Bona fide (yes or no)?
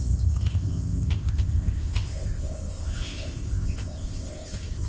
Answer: no